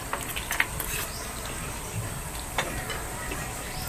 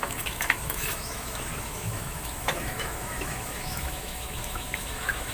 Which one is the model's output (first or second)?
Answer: second